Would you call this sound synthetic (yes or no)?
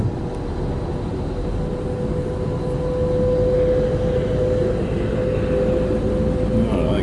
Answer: no